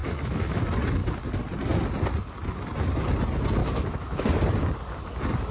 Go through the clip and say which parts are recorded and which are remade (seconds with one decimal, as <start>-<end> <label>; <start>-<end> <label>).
0.0-0.6 remade; 0.6-3.6 recorded; 3.6-4.2 remade; 4.2-5.5 recorded